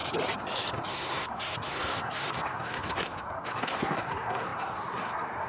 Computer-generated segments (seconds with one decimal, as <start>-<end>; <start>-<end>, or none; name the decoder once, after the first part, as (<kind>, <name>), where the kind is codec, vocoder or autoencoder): 0.9-5.5 (codec, SNAC)